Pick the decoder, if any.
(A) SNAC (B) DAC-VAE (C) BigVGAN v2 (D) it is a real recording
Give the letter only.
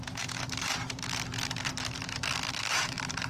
C